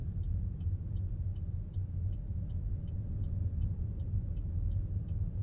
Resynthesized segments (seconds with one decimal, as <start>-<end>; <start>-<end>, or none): 0.0-0.7